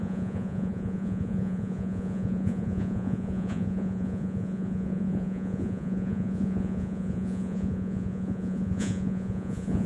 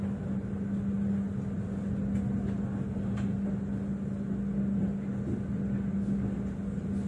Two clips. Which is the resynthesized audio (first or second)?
first